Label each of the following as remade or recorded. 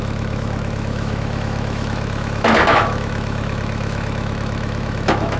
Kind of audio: remade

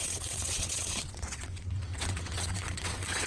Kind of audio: remade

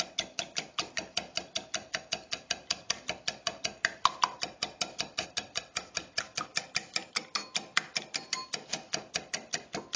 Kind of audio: recorded